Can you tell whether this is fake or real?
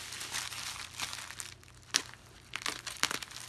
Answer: real